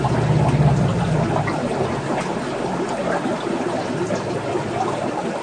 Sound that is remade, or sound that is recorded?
recorded